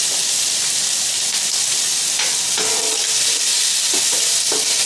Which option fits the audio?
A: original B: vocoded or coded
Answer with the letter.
A